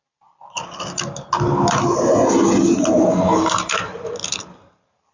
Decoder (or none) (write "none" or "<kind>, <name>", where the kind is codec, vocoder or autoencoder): none